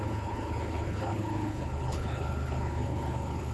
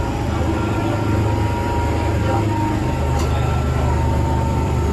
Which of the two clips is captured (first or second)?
second